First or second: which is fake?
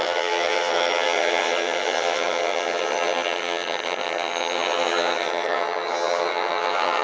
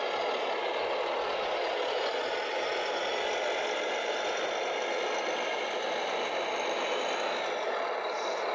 first